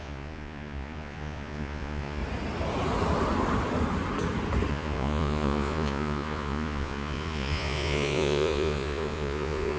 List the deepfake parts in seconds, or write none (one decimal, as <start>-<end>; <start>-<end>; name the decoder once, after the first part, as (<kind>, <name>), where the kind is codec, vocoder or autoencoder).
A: 0.0-2.2 (vocoder, Vocos); 4.7-9.8